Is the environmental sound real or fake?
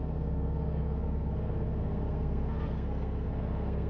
fake